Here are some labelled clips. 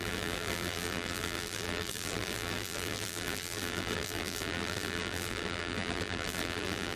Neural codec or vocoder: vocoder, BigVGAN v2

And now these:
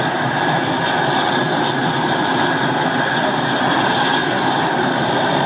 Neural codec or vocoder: none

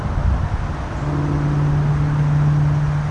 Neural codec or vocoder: none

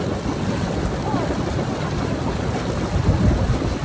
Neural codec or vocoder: none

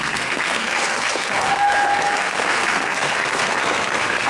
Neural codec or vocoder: codec, SNAC